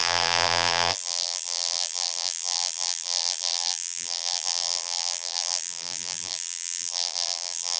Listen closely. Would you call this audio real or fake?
fake